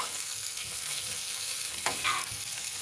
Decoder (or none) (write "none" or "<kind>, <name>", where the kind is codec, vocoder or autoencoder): codec, SNAC